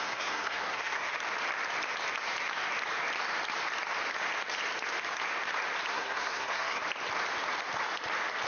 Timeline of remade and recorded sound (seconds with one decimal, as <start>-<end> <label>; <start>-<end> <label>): 0.0-1.1 remade; 1.1-5.9 recorded; 5.9-6.8 remade; 6.8-8.5 recorded

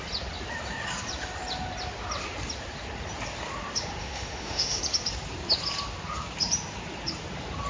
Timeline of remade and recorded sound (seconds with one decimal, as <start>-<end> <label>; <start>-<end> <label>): 0.0-4.0 recorded; 4.0-4.8 remade; 4.8-7.7 recorded

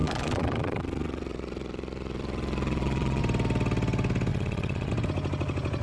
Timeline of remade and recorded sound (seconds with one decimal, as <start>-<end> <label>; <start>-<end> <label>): 0.0-3.2 remade; 3.2-4.3 recorded; 4.3-4.9 remade; 4.9-5.8 recorded

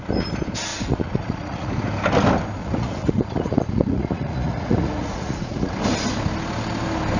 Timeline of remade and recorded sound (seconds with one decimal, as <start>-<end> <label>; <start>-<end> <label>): 0.0-0.7 recorded; 0.7-1.7 remade; 1.7-2.6 recorded; 2.6-5.7 remade; 5.7-7.2 recorded

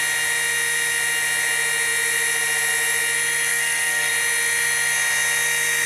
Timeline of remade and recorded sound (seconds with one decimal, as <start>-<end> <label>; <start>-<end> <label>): 0.0-3.5 recorded; 3.5-4.1 remade; 4.1-5.9 recorded

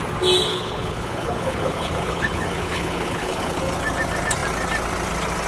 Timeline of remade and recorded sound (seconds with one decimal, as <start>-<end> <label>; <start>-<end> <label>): 0.0-0.5 recorded; 0.5-3.6 remade; 3.6-5.5 recorded

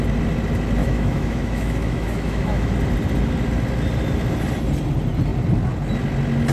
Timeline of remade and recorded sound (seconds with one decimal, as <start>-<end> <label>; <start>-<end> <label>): 0.0-0.8 recorded; 0.8-2.7 remade; 2.7-6.5 recorded